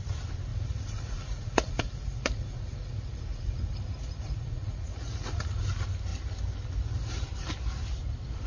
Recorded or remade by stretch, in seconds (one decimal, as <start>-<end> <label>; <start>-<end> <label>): 0.0-0.5 recorded; 0.5-5.6 remade; 5.6-8.5 recorded